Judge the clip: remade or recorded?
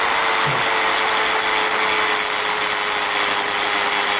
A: recorded